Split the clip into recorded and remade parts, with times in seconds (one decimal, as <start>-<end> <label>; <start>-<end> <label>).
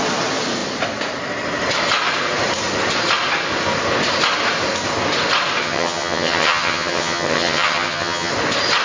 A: 0.0-5.6 recorded; 5.6-8.3 remade; 8.3-8.8 recorded